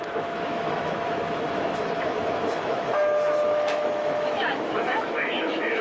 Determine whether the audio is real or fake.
fake